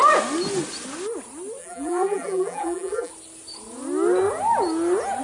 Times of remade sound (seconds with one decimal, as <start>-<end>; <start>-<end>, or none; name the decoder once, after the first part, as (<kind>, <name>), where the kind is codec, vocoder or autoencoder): 1.6-3.1 (vocoder, BigVGAN v2)